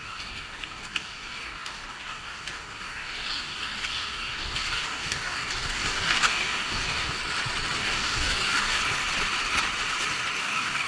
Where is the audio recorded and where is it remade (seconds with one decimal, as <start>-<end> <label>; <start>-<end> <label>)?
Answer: 0.0-7.2 remade; 7.2-7.8 recorded; 7.8-8.8 remade; 8.8-10.4 recorded; 10.4-10.9 remade